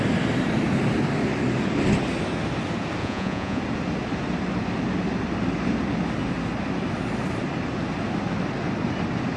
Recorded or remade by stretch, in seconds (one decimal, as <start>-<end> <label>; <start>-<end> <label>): 0.0-3.0 recorded; 3.0-3.6 remade; 3.6-9.4 recorded